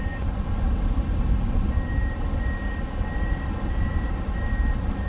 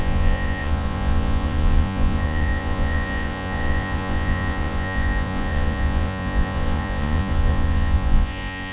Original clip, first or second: first